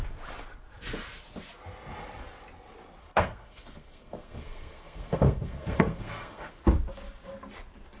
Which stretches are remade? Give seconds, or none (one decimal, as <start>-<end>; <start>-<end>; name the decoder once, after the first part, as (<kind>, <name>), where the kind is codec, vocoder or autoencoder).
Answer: 3.0-6.6 (codec, SNAC)